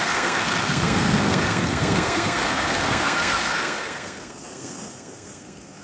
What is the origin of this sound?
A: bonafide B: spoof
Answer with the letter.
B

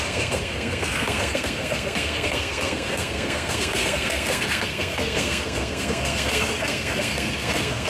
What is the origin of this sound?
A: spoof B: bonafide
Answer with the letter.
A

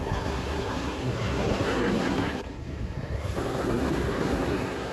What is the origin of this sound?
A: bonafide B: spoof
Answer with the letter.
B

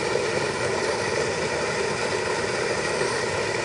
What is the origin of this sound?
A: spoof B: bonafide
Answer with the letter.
B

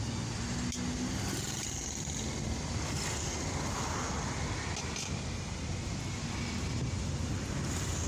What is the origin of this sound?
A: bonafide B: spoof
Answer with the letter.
A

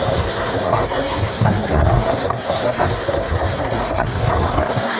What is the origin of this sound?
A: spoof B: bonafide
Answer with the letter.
A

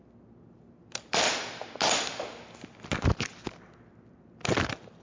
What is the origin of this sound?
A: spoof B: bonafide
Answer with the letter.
B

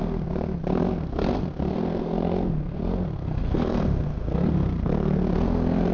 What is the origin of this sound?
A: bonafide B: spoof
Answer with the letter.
B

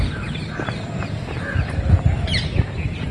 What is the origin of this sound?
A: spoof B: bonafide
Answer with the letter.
B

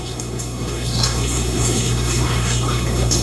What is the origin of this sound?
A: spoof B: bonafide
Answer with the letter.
A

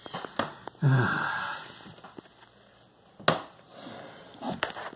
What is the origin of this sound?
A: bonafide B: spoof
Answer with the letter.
A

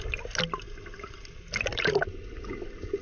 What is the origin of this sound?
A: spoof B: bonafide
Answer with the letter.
B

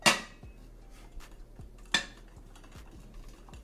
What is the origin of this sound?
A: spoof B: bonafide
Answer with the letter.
B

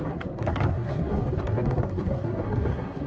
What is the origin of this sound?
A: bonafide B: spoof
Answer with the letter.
B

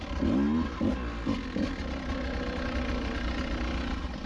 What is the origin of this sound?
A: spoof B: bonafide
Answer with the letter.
B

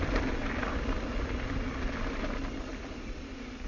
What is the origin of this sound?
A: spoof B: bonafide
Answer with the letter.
B